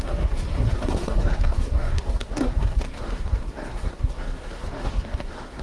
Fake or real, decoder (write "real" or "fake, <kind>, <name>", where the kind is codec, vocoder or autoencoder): fake, codec, SNAC